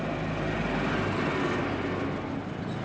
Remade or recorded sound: recorded